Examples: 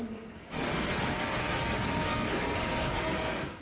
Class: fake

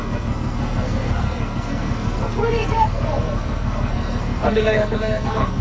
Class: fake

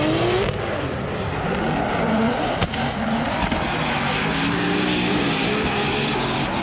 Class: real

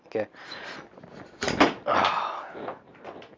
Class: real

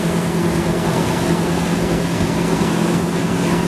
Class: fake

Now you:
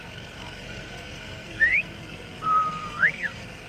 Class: fake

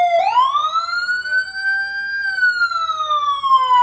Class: real